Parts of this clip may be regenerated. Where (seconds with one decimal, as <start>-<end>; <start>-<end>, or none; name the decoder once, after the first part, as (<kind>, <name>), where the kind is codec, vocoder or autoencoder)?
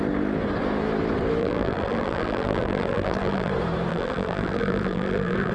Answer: 1.4-3.5 (vocoder, BigVGAN v2); 3.9-5.5